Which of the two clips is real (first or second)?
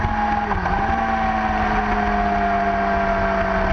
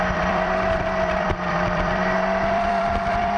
first